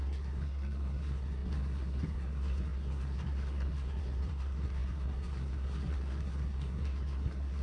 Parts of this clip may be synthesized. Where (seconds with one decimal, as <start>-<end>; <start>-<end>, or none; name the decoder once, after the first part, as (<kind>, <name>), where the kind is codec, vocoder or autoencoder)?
0.0-7.6 (codec, SNAC)